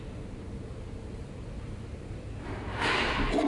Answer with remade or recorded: remade